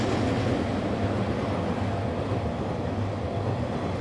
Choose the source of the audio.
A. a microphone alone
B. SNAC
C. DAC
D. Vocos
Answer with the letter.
A